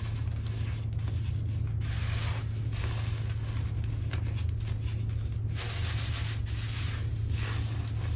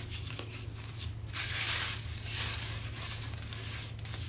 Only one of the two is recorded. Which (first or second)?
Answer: first